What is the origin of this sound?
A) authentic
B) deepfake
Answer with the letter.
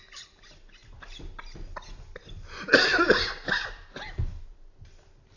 A